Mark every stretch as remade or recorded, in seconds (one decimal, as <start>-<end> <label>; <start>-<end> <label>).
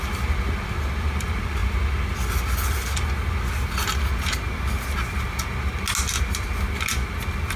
0.0-7.6 recorded